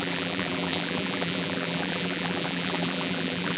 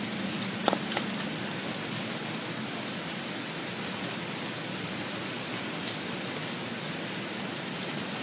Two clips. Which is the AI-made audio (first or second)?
first